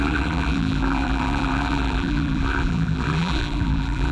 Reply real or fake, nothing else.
fake